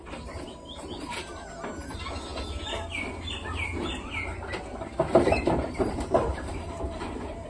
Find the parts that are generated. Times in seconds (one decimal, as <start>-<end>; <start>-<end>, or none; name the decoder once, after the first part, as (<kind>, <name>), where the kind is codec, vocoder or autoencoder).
none

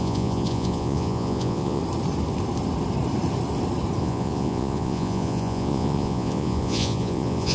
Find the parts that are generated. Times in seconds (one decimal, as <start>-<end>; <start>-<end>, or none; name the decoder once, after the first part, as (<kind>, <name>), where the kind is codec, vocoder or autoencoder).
0.0-1.8 (vocoder, Vocos); 4.0-7.5

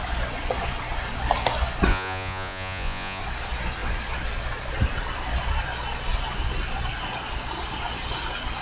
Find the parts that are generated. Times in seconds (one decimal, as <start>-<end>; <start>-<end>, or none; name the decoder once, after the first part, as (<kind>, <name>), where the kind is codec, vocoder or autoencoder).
1.9-3.2 (vocoder, Vocos)